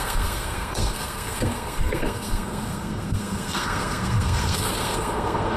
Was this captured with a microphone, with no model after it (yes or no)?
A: no